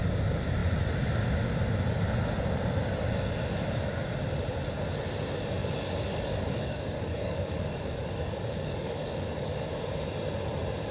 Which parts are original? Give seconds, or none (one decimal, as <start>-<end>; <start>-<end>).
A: 0.0-5.6; 9.7-10.9